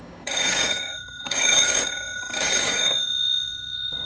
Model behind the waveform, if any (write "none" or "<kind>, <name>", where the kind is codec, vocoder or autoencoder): codec, DAC